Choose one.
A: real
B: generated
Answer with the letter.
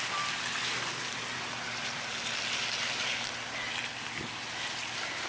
A